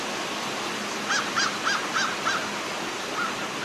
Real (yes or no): yes